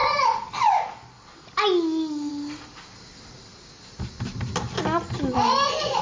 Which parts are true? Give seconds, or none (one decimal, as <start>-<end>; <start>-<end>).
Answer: 0.0-6.0